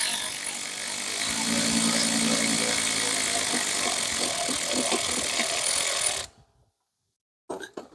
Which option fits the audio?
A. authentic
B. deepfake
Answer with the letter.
A